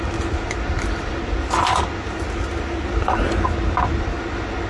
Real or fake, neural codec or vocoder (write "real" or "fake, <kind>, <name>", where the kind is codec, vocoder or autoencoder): real